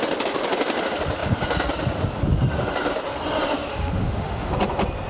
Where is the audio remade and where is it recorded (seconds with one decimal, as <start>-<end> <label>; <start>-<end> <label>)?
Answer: 0.0-3.7 recorded; 3.7-4.5 remade; 4.5-5.1 recorded